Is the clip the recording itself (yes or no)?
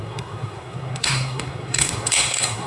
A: no